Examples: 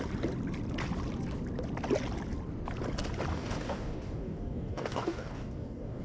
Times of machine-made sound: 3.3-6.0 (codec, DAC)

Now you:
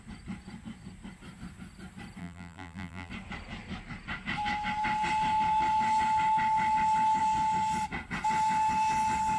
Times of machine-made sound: 2.2-3.1 (vocoder, BigVGAN v2)